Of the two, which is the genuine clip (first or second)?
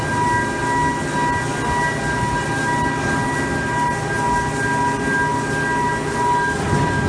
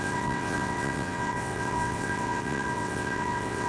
first